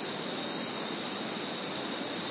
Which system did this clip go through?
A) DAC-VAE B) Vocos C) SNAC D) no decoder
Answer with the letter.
D